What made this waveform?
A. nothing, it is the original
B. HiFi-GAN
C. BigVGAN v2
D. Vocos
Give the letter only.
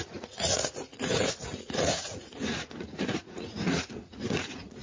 D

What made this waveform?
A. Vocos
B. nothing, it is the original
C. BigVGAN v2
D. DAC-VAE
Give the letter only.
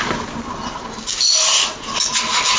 B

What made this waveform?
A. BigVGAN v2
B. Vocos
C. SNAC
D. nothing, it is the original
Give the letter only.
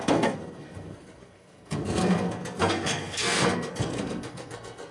C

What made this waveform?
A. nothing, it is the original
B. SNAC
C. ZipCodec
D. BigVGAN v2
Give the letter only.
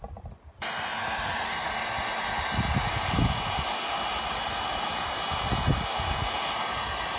A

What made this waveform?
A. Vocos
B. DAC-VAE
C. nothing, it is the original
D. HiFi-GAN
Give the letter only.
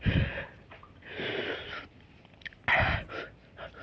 C